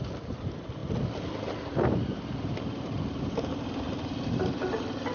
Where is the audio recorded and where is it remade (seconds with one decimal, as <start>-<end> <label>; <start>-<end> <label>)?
0.0-5.1 recorded